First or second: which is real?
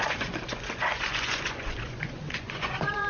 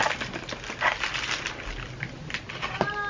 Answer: second